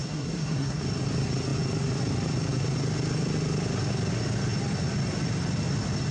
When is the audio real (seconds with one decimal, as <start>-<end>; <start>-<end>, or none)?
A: 0.8-6.1

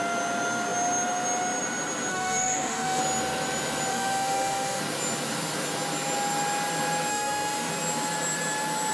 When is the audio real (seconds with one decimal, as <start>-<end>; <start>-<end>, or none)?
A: 0.0-2.1; 3.0-3.9; 4.8-7.1; 7.7-8.9

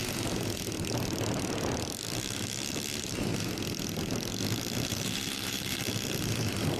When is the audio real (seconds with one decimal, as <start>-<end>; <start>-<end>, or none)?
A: 0.0-4.9; 5.8-6.8